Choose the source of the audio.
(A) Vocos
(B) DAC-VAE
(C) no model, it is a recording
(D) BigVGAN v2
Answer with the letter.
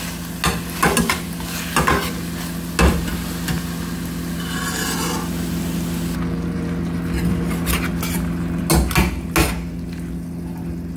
C